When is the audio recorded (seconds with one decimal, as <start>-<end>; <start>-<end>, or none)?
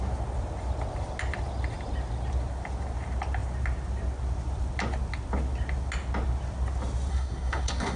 0.0-7.1